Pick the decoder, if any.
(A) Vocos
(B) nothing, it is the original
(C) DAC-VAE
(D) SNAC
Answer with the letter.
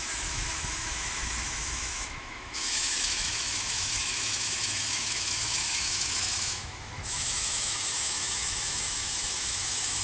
C